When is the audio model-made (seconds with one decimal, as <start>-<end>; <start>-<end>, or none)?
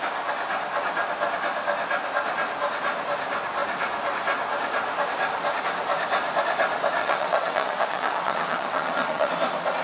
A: 7.0-9.3